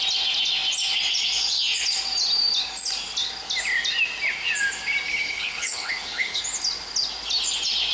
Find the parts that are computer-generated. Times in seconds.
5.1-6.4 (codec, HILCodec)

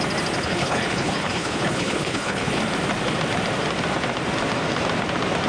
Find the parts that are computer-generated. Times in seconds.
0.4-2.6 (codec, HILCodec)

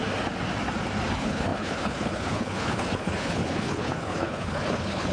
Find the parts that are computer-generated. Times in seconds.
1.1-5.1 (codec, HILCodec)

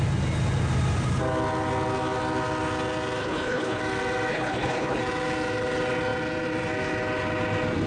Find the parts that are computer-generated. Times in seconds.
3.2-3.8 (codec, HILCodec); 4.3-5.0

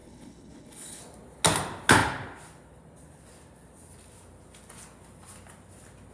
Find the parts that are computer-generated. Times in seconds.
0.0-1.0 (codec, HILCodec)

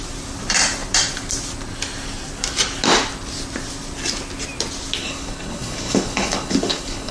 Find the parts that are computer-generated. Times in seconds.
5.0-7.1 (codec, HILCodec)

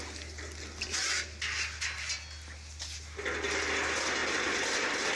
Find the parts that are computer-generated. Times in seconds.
none

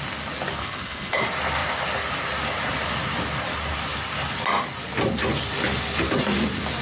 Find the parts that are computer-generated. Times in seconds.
0.6-1.2 (codec, HILCodec)